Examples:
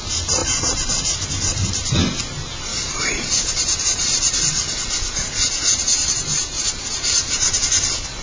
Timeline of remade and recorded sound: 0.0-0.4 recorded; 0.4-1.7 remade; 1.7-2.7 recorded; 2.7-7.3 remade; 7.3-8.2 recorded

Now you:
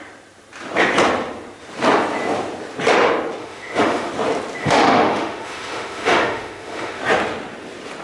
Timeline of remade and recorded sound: 0.0-3.4 recorded; 3.4-4.1 remade; 4.1-4.6 recorded; 4.6-7.0 remade; 7.0-8.0 recorded

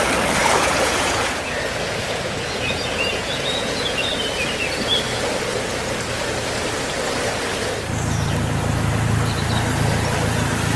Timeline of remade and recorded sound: 0.0-0.4 recorded; 0.4-4.1 remade; 4.1-10.8 recorded

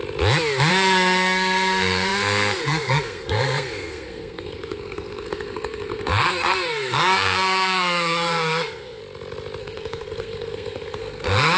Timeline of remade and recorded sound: 0.0-0.7 recorded; 0.7-9.0 remade; 9.0-9.6 recorded; 9.6-11.6 remade

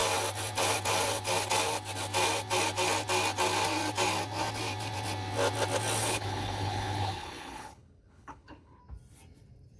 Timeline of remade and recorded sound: 0.0-6.0 recorded; 6.0-8.8 remade; 8.8-9.8 recorded

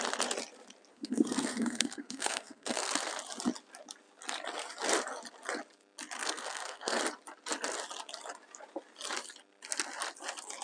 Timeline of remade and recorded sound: 0.0-0.9 recorded; 0.9-2.9 remade; 2.9-6.2 recorded; 6.2-7.0 remade; 7.0-10.6 recorded

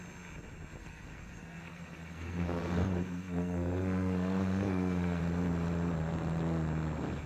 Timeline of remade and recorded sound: 0.0-0.8 recorded; 0.8-5.2 remade; 5.2-7.3 recorded